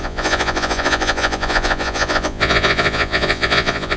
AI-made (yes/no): yes